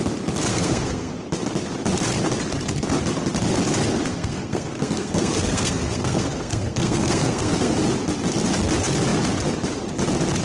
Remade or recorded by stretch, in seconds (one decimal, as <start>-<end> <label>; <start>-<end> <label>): 0.0-0.5 recorded; 0.5-1.1 remade; 1.1-4.1 recorded; 4.1-7.8 remade; 7.8-10.4 recorded

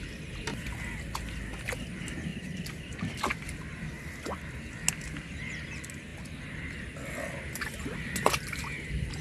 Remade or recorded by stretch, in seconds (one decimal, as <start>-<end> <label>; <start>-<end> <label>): 0.0-2.3 recorded; 2.3-3.0 remade; 3.0-9.2 recorded

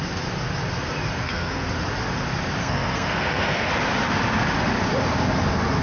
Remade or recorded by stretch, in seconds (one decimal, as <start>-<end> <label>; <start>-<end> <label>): 0.0-1.2 recorded; 1.2-1.7 remade; 1.7-2.6 recorded; 2.6-3.7 remade; 3.7-5.8 recorded

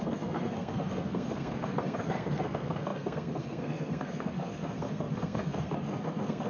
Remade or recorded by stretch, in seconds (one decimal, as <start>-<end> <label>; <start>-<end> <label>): 0.0-6.5 remade

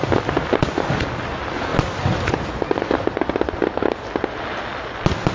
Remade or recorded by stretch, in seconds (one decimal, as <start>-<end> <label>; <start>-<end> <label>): 0.0-5.3 recorded

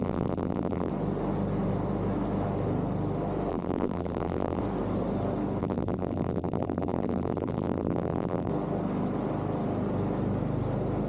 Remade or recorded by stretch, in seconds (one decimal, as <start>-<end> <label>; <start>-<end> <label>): 0.0-0.9 remade; 0.9-3.5 recorded; 3.5-4.6 remade; 4.6-5.6 recorded; 5.6-8.5 remade; 8.5-11.1 recorded